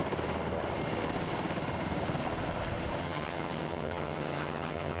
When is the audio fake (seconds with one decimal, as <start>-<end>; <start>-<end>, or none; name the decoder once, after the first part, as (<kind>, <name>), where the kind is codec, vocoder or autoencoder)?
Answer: 3.0-5.0 (vocoder, HiFi-GAN)